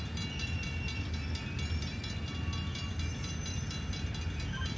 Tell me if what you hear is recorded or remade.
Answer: recorded